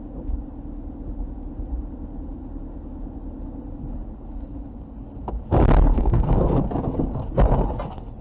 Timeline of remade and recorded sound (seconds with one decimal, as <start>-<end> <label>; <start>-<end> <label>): 0.0-5.9 recorded; 5.9-6.6 remade; 6.6-8.2 recorded